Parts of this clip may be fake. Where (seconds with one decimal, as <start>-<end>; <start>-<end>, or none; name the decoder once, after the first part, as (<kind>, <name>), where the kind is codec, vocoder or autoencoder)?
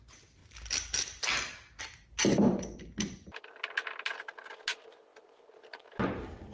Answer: none